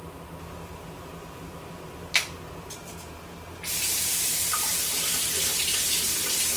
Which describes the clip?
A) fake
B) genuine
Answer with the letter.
A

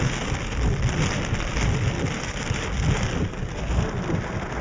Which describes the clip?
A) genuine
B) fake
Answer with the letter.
A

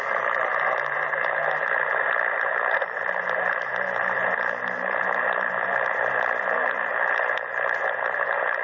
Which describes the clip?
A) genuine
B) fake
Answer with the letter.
A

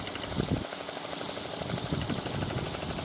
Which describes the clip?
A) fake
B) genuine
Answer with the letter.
B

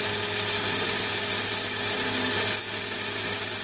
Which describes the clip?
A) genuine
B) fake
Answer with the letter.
A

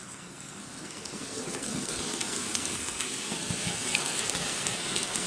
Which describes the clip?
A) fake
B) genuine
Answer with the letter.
A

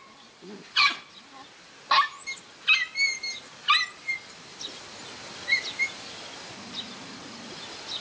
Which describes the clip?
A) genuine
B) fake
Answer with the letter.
A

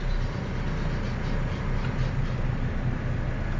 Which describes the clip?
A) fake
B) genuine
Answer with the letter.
B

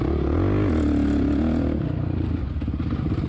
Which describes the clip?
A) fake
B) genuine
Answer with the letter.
B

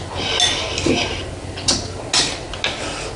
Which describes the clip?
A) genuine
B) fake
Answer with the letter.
A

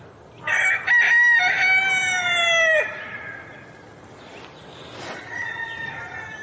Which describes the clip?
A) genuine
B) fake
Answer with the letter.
A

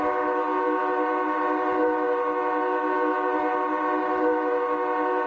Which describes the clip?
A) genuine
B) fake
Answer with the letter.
A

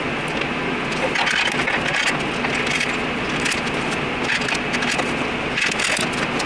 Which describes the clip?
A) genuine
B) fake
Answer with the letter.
A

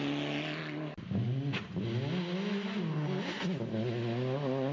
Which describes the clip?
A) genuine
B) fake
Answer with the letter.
A